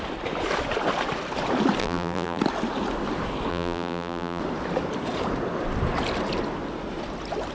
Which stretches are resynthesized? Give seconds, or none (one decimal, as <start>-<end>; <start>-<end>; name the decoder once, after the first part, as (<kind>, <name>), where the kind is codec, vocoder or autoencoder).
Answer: 1.8-2.4 (vocoder, BigVGAN v2); 3.5-4.4